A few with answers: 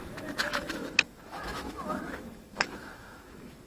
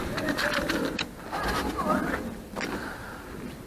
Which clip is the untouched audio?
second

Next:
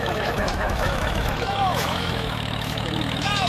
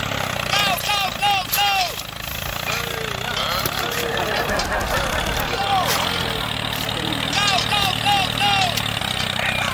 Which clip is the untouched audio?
second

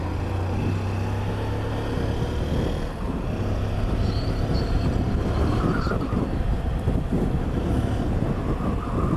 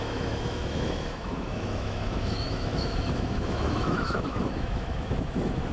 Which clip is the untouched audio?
first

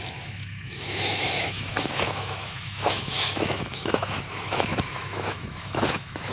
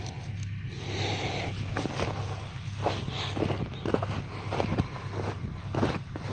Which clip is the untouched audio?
second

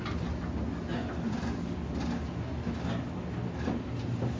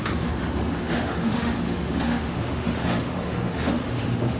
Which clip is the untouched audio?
first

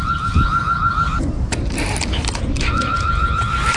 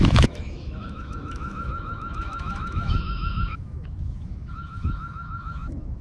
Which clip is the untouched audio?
first